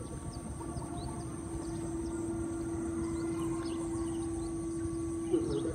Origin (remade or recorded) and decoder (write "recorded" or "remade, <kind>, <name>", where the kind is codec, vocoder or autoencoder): recorded